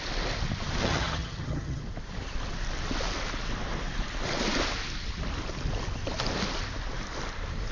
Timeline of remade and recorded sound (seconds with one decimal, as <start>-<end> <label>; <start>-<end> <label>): 0.0-0.8 recorded; 0.8-1.8 remade; 1.8-7.7 recorded